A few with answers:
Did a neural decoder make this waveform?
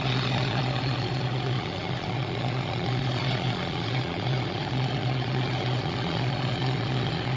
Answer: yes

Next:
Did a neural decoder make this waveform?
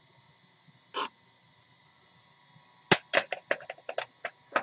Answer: no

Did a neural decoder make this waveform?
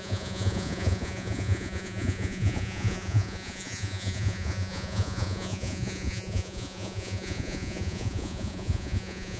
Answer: yes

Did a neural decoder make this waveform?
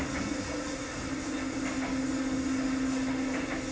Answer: no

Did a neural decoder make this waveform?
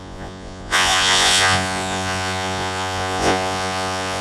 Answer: yes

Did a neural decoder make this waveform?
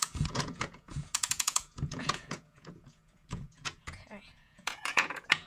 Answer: yes